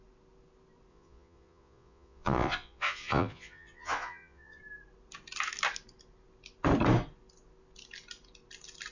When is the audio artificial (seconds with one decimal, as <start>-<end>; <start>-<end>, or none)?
0.9-4.6